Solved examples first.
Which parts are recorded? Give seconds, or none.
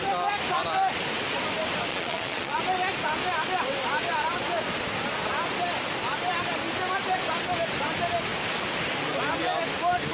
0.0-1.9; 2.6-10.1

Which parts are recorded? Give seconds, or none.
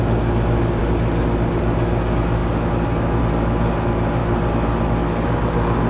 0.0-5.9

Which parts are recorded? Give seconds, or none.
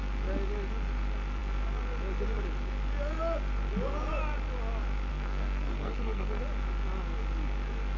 0.0-5.1; 6.4-8.0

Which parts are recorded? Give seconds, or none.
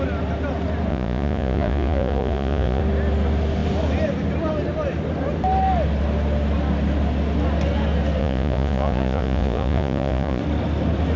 0.0-0.9; 2.8-8.2; 10.4-11.2